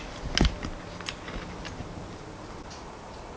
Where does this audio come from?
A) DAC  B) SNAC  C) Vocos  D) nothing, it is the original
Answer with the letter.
D